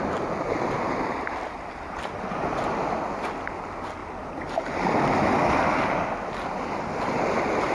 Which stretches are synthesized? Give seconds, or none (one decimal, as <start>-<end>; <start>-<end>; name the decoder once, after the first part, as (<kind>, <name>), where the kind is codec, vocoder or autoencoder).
none